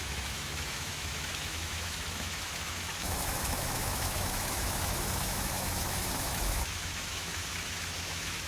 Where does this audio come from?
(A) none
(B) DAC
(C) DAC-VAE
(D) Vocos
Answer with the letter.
C